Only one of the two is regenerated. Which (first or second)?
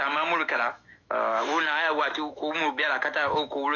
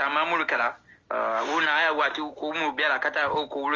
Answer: first